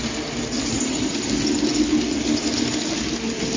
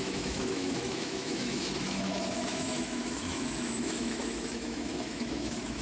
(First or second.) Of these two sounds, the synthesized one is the second